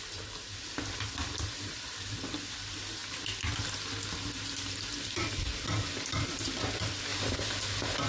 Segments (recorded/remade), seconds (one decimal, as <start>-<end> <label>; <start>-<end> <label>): 0.0-3.0 remade; 3.0-4.3 recorded; 4.3-7.1 remade; 7.1-8.1 recorded